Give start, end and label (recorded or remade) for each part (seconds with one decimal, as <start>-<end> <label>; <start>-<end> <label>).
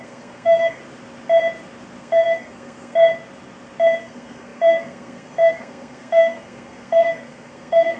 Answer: 0.0-0.8 remade; 0.8-2.0 recorded; 2.0-3.1 remade; 3.1-4.0 recorded; 4.0-8.0 remade